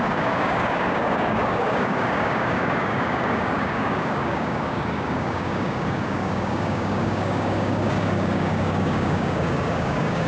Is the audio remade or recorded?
remade